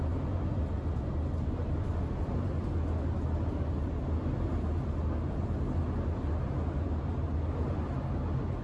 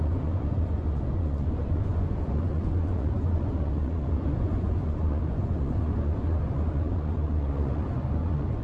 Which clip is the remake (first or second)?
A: second